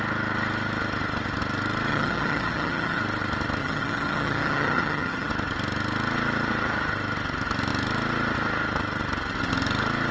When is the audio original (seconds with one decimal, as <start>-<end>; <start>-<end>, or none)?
0.0-1.9; 3.0-3.6; 5.3-10.1